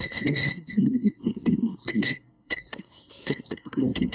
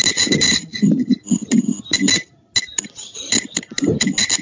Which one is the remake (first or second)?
first